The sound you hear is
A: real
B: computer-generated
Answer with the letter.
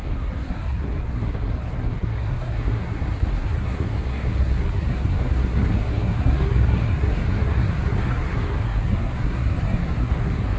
B